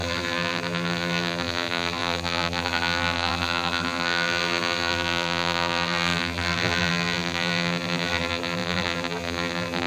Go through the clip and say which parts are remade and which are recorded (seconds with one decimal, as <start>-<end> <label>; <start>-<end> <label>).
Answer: 0.0-9.9 remade